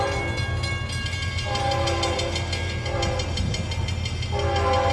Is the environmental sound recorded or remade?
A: recorded